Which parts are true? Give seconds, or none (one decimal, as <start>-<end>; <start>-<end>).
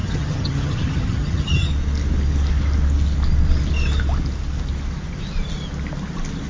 1.7-6.5